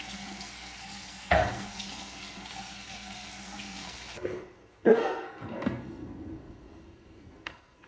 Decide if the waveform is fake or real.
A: fake